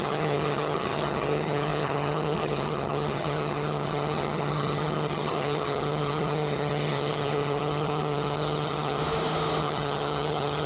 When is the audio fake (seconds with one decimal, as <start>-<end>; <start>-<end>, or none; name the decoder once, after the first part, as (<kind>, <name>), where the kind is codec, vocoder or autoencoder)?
0.0-9.0 (vocoder, HiFi-GAN); 9.6-10.7